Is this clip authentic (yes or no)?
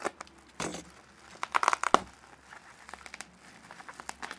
yes